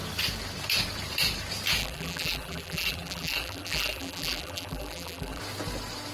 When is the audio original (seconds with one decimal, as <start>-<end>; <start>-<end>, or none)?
0.0-1.8; 5.4-6.1